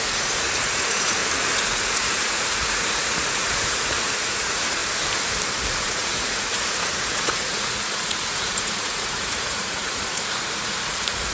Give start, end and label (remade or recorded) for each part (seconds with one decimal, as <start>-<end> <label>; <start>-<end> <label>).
0.0-1.2 remade; 1.2-1.7 recorded; 1.7-4.8 remade; 4.8-5.7 recorded; 5.7-11.3 remade